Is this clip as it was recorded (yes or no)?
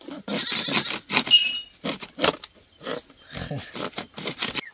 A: yes